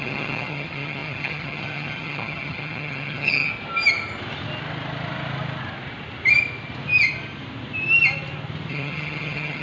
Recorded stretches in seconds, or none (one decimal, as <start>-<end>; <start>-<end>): 3.5-8.7